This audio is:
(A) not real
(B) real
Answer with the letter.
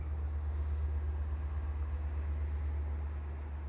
B